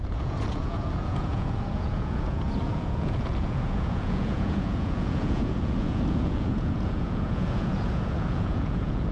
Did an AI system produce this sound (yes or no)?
yes